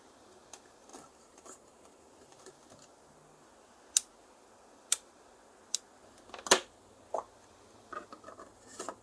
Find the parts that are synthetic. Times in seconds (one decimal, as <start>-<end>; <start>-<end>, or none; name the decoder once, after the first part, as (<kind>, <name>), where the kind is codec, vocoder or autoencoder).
0.9-2.5 (vocoder, BigVGAN v2)